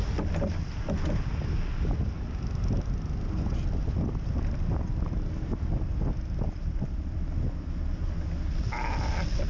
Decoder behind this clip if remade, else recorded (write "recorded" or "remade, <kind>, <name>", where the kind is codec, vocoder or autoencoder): recorded